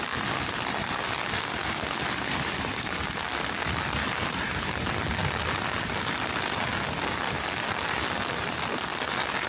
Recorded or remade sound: recorded